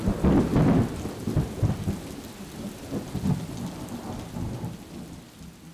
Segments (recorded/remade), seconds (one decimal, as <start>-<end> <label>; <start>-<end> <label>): 0.0-5.7 recorded